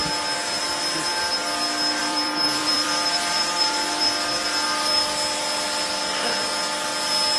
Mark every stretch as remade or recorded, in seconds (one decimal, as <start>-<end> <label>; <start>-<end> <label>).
0.0-2.0 recorded; 2.0-5.0 remade; 5.0-7.4 recorded